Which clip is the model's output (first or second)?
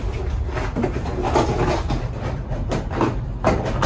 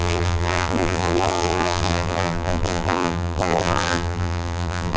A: second